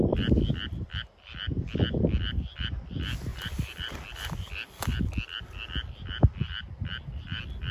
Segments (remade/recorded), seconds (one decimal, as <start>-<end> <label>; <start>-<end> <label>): 0.0-3.3 recorded; 3.3-3.9 remade; 3.9-7.7 recorded